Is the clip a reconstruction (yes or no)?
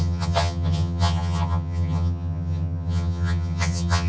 yes